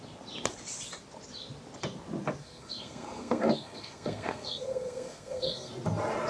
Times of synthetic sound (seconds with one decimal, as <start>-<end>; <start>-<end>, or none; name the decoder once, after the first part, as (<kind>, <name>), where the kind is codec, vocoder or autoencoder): 2.4-5.7 (codec, SNAC)